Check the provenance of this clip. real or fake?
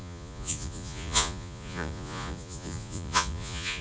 fake